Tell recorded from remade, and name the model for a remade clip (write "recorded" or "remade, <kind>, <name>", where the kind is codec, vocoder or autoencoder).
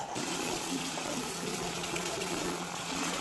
remade, vocoder, Vocos